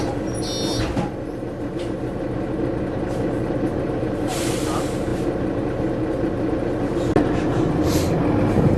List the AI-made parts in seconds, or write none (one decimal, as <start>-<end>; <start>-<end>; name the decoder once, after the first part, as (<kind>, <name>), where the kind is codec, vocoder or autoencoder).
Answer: none